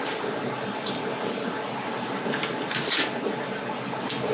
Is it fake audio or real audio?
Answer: real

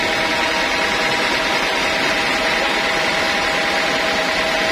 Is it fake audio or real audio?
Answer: real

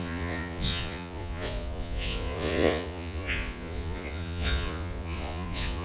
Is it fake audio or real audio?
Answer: fake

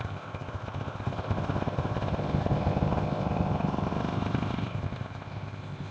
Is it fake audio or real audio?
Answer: fake